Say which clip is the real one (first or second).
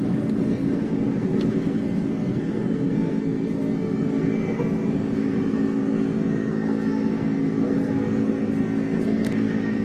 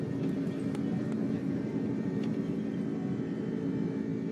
second